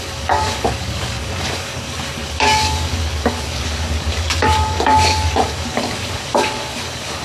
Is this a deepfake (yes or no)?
yes